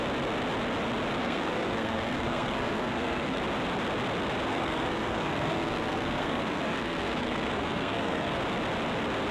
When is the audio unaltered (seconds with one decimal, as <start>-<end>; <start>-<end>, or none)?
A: 0.0-1.2; 3.4-4.5; 8.4-9.3